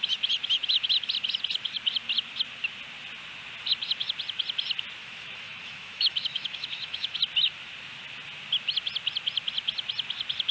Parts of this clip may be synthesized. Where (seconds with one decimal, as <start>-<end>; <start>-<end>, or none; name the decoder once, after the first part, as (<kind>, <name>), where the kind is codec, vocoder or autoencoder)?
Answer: 5.0-7.2 (autoencoder, DAC-VAE)

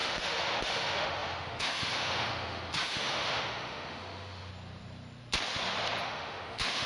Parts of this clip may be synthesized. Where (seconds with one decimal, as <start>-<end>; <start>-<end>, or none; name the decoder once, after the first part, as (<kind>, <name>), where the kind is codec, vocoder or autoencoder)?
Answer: 0.0-4.5 (autoencoder, DAC-VAE); 6.0-6.9

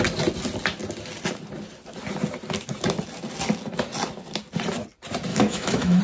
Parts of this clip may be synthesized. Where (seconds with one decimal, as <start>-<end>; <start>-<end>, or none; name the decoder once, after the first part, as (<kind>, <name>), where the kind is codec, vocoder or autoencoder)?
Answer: 5.3-6.0 (autoencoder, DAC-VAE)

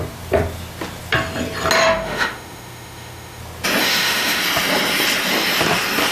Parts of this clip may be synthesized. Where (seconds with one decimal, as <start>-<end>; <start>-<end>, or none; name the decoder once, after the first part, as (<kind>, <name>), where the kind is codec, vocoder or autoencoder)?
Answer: 1.8-3.4 (autoencoder, DAC-VAE); 3.8-4.4

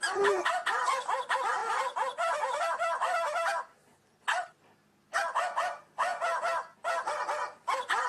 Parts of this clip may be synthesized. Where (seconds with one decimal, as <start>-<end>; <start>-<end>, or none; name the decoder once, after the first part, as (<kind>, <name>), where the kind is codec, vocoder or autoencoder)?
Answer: none

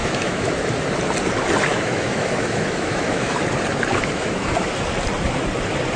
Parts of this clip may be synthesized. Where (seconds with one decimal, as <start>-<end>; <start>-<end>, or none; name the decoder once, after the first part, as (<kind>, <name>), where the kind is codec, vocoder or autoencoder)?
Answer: 0.0-0.5 (autoencoder, DAC-VAE); 1.7-3.4; 3.9-4.7